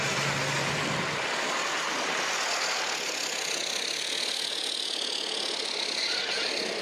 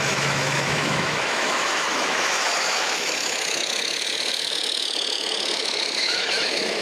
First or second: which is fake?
second